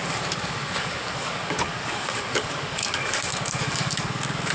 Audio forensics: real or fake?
fake